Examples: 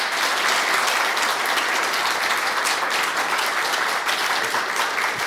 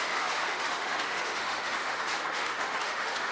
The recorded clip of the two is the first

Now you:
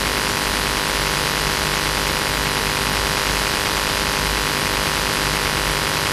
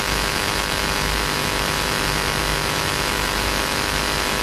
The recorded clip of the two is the first